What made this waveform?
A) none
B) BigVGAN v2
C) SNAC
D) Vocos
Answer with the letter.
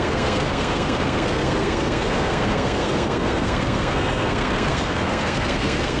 C